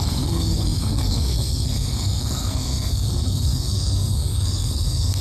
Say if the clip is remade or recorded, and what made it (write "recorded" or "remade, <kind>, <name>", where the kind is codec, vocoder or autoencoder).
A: remade, codec, SNAC